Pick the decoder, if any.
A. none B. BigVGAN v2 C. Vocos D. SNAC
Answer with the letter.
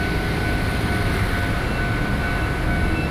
A